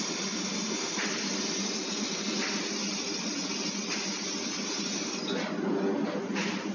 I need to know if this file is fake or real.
real